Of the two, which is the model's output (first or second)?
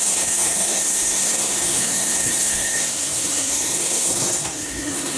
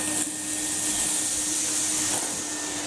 first